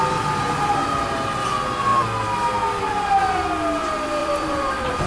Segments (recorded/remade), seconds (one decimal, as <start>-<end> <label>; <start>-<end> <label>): 0.0-4.2 recorded; 4.2-5.1 remade